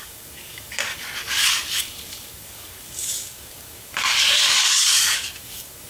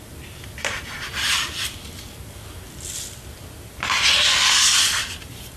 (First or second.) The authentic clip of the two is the second